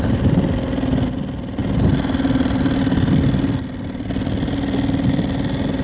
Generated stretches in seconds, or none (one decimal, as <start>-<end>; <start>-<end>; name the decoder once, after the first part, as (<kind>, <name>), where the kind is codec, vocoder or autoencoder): none